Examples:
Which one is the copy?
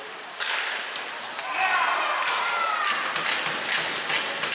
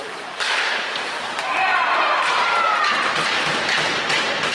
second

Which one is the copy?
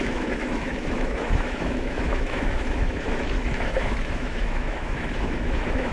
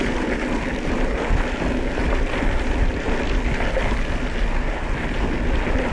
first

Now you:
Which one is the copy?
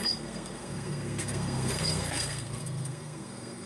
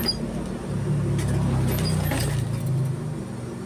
first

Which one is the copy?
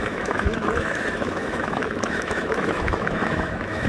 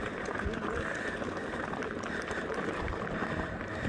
first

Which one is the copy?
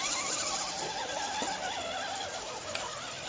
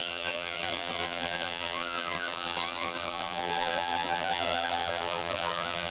second